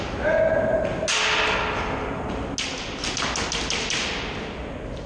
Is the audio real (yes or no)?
yes